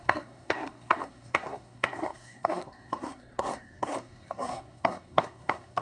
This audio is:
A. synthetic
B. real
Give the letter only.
A